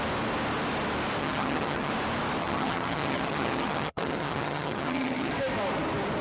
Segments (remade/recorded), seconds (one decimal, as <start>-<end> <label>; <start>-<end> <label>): 0.0-1.2 recorded; 1.2-1.9 remade; 1.9-2.4 recorded; 2.4-5.3 remade; 5.3-6.2 recorded

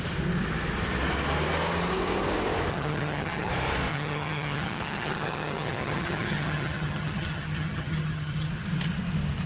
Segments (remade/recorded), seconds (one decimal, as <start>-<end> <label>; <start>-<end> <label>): 0.0-2.7 recorded; 2.7-3.5 remade; 3.5-3.9 recorded; 3.9-8.5 remade; 8.5-9.5 recorded

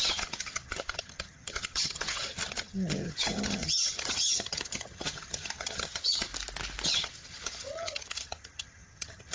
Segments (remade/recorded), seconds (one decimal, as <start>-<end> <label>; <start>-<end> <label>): 0.0-6.3 remade; 6.3-6.9 recorded; 6.9-9.3 remade

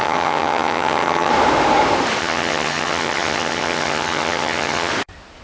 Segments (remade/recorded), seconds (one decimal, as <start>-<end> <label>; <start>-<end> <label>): 0.0-1.3 remade; 1.3-2.2 recorded; 2.2-4.9 remade; 4.9-5.4 recorded

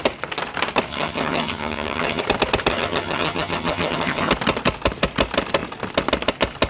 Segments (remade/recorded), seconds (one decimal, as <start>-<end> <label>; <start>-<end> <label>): 0.0-0.9 recorded; 0.9-2.2 remade; 2.2-2.7 recorded; 2.7-4.3 remade; 4.3-6.7 recorded

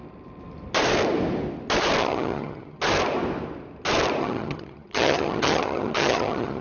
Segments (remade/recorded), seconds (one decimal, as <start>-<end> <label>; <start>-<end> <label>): 0.0-2.0 recorded; 2.0-2.8 remade; 2.8-4.2 recorded; 4.2-6.6 remade

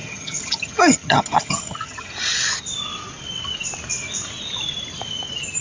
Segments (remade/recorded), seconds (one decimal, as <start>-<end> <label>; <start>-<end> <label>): 0.0-2.1 remade; 2.1-5.6 recorded

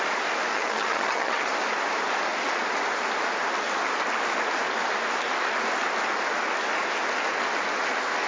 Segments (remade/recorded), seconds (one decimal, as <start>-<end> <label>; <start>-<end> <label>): 0.0-0.5 recorded; 0.5-1.5 remade; 1.5-8.3 recorded